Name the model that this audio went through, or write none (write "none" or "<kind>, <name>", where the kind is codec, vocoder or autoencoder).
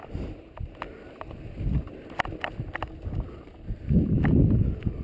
none